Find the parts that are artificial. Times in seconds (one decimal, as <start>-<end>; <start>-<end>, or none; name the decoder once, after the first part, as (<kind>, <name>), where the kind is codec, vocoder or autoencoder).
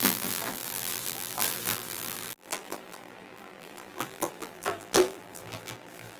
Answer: 0.0-6.2 (vocoder, BigVGAN v2)